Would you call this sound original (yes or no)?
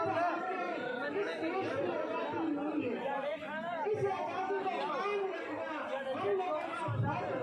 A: yes